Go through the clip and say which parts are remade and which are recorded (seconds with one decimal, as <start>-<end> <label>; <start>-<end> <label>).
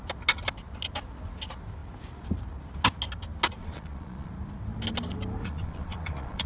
0.0-3.6 recorded; 3.6-4.3 remade; 4.3-5.4 recorded; 5.4-6.5 remade